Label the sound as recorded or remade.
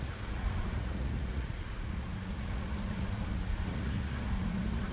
remade